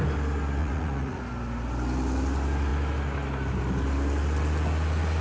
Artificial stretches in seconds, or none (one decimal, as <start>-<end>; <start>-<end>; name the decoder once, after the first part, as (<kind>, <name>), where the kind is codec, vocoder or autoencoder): 0.6-1.2 (vocoder, Vocos)